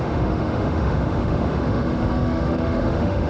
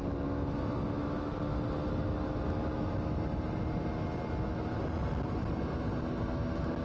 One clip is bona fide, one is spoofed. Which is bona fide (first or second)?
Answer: second